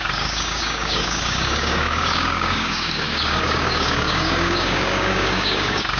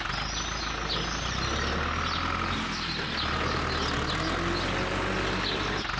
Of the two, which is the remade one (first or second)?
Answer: first